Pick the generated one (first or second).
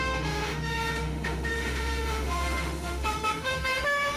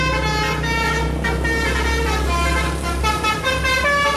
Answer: first